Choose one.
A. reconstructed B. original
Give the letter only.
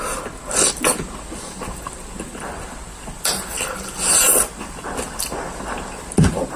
B